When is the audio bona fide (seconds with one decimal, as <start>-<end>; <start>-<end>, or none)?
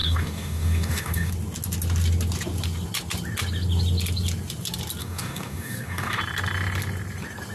1.3-5.0; 6.2-7.5